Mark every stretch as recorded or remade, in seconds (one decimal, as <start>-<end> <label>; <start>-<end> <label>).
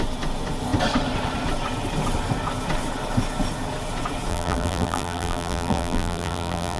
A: 0.0-4.3 recorded; 4.3-6.8 remade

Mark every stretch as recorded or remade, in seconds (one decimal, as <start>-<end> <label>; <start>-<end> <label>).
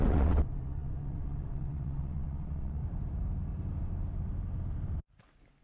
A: 0.0-2.8 remade; 2.8-5.6 recorded